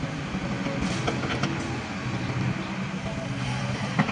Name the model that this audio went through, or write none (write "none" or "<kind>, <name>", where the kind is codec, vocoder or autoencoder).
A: none